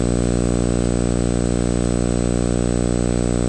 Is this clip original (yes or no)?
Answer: yes